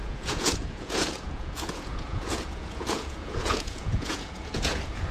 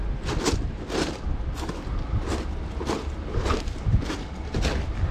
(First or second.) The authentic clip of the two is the second